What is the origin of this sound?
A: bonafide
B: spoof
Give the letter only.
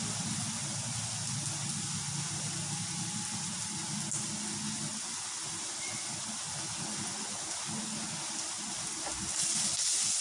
A